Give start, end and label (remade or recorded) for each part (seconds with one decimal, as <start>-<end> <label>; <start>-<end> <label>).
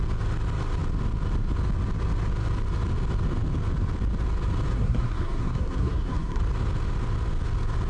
0.0-4.7 recorded; 4.7-6.4 remade; 6.4-7.9 recorded